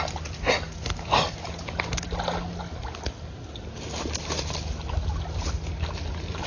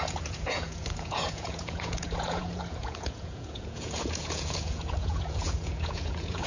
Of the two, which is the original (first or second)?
first